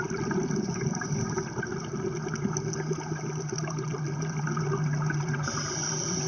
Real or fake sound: real